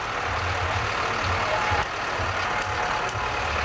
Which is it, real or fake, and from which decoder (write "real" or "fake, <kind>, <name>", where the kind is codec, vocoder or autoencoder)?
real